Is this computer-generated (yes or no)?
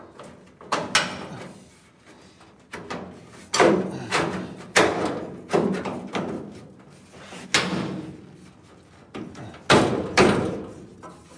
no